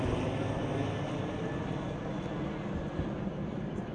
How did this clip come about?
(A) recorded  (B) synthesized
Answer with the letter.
A